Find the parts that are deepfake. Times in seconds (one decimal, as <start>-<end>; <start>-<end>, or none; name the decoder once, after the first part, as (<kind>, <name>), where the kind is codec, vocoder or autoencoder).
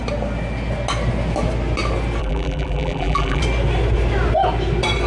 2.2-3.4 (vocoder, BigVGAN v2)